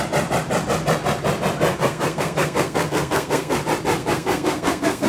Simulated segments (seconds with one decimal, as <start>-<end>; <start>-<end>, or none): 1.7-3.6; 4.0-5.1